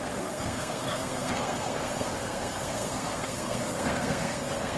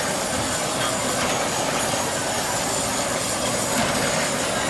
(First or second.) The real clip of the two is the second